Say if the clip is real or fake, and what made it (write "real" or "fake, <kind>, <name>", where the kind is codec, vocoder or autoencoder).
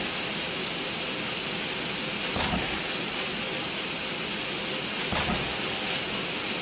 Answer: real